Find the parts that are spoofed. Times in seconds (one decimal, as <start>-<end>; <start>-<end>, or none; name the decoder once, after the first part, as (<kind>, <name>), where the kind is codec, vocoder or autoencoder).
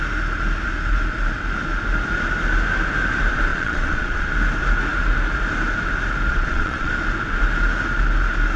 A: 3.5-4.3 (vocoder, Vocos); 6.3-6.9